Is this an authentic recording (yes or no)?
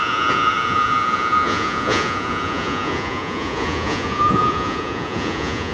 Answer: no